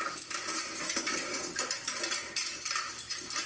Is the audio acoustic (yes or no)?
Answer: yes